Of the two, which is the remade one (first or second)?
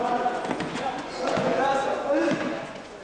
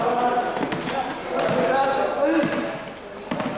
first